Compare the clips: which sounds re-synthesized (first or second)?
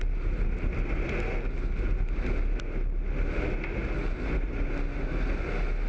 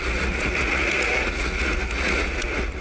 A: second